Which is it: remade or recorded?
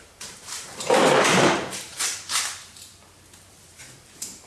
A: remade